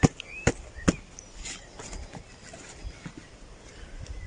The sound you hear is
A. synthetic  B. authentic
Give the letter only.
B